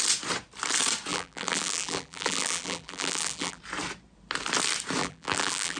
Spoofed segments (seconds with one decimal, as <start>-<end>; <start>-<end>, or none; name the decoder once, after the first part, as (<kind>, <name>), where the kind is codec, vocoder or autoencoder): 1.1-3.6 (vocoder, BigVGAN v2); 5.0-5.8